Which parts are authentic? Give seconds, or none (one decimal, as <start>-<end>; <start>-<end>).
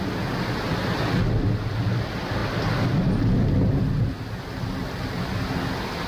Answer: 0.0-6.1